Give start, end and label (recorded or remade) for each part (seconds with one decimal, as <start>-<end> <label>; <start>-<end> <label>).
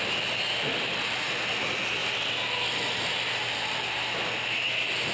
0.0-5.1 recorded